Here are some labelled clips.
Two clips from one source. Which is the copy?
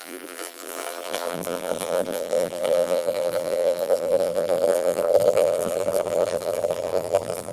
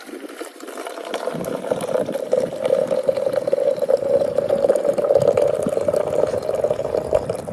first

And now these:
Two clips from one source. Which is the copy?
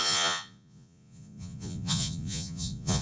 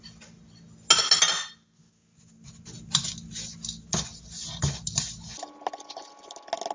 first